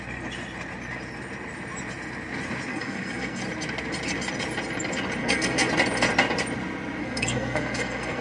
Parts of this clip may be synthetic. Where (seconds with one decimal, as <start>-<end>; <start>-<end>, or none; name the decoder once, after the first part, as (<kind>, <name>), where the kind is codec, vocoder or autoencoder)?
2.7-3.4 (codec, SNAC); 5.2-5.7; 7.0-8.2